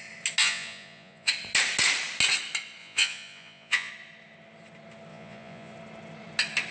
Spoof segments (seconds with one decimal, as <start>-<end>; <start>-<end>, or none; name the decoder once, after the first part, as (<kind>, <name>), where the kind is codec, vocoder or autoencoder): 0.4-1.3 (vocoder, Vocos); 2.8-3.9; 5.1-5.7